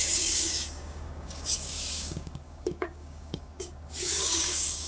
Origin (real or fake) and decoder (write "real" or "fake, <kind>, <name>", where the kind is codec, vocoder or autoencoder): fake, codec, DAC